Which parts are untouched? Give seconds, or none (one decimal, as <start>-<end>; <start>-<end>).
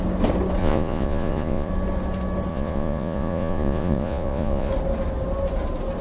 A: 0.0-0.6; 1.7-2.5; 4.7-6.0